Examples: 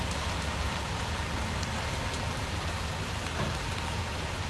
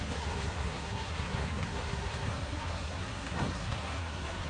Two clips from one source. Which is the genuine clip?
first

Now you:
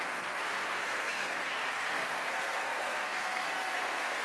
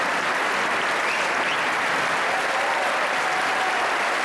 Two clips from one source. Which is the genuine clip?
second